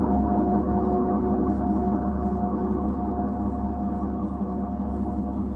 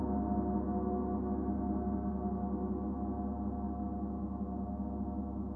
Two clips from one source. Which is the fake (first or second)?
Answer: first